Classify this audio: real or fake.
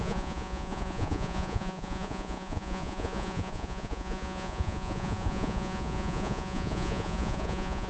fake